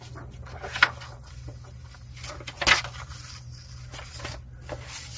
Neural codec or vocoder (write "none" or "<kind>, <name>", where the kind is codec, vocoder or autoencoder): none